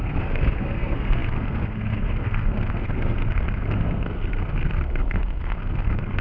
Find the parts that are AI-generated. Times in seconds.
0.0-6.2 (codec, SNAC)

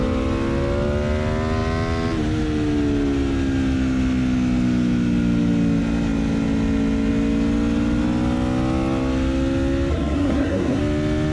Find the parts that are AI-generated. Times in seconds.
9.9-10.8 (codec, SNAC)

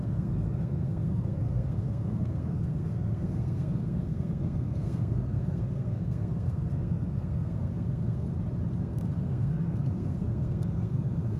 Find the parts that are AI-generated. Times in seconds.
0.0-8.3 (codec, SNAC); 8.8-11.4

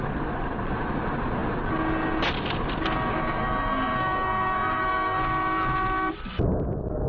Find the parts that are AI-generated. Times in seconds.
3.1-5.2 (codec, SNAC)

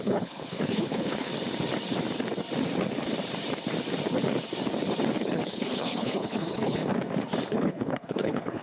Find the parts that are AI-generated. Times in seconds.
0.0-1.3 (codec, HILCodec); 5.2-6.8; 7.5-8.6

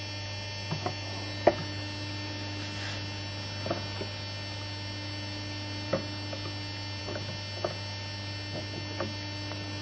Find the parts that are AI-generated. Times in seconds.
none

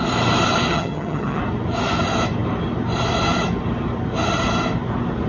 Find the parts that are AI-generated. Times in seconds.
0.7-1.4 (vocoder, HiFi-GAN)